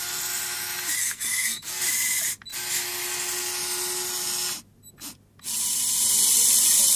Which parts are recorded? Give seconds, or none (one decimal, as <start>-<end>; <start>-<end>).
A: 0.0-1.0; 1.8-7.0